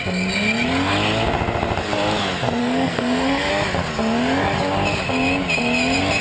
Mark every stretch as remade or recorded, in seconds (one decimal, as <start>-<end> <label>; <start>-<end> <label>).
0.0-2.6 recorded; 2.6-3.5 remade; 3.5-6.2 recorded